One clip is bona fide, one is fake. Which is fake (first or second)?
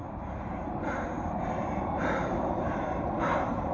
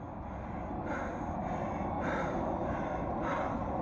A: first